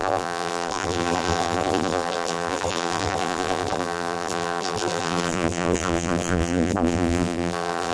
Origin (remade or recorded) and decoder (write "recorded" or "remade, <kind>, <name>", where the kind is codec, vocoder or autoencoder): remade, vocoder, BigVGAN v2